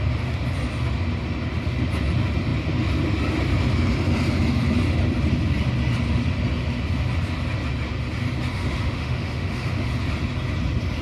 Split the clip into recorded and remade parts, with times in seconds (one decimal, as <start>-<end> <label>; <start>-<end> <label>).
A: 0.0-8.5 recorded; 8.5-9.9 remade; 9.9-11.0 recorded